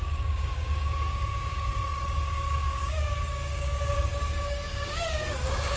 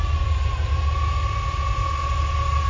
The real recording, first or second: second